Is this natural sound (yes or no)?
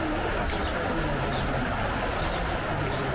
yes